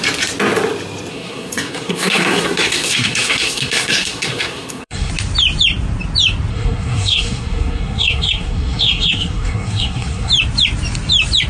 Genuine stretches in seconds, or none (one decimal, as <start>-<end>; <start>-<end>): 0.0-1.1; 5.1-6.5; 10.3-11.5